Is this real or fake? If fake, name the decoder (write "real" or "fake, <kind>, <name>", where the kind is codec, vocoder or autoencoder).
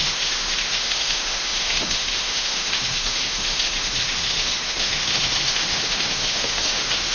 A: fake, autoencoder, DAC-VAE